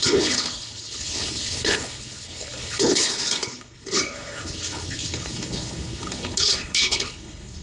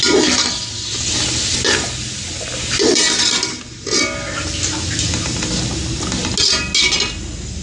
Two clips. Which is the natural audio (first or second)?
second